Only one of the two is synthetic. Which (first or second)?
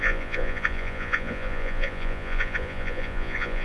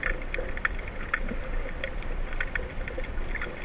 first